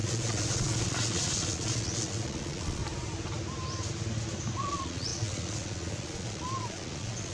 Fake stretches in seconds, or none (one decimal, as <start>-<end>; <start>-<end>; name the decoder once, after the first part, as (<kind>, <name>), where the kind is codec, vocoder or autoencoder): 0.0-2.8 (vocoder, Vocos); 4.6-7.3